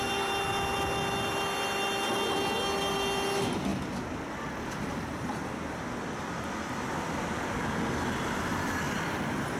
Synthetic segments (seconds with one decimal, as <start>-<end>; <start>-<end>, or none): none